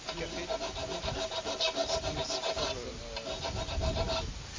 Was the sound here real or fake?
real